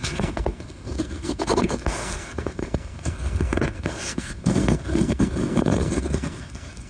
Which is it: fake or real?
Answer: fake